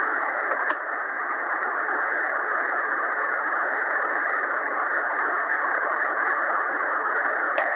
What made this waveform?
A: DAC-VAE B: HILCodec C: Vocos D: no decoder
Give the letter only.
B